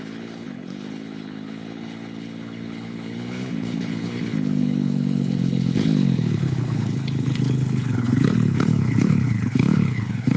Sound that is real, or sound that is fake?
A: fake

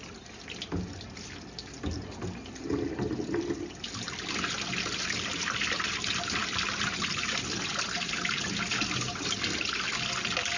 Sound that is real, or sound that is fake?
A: real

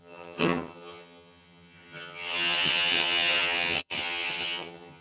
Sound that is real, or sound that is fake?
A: fake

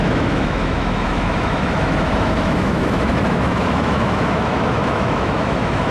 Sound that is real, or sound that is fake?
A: fake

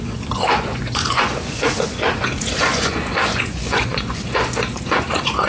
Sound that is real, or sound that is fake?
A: fake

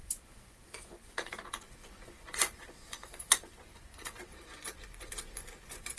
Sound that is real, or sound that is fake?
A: fake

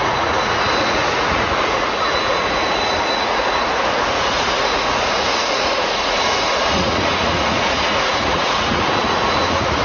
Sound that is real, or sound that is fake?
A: fake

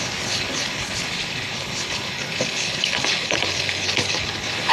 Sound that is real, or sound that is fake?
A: fake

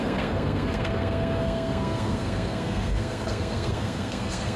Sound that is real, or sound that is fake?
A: fake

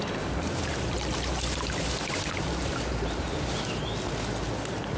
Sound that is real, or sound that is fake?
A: fake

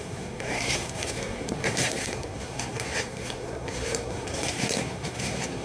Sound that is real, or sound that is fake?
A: fake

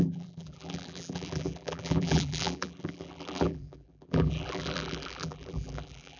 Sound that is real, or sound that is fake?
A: fake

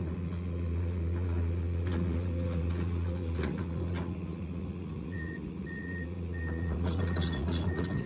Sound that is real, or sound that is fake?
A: fake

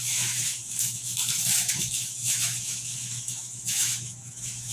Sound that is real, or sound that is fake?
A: fake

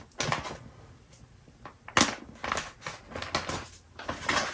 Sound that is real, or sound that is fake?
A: real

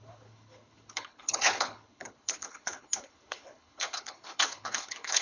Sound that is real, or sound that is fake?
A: fake